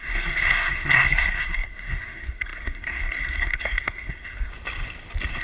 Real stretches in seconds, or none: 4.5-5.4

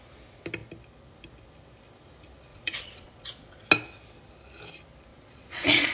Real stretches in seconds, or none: 0.0-2.5; 3.7-5.1

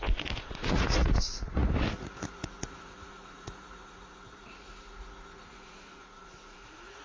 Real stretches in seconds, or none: none